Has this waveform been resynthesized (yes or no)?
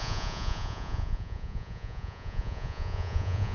yes